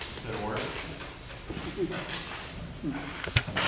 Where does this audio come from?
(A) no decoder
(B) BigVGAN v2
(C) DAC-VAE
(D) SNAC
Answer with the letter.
A